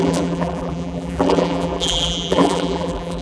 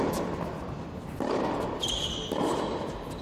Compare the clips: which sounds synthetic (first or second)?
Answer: first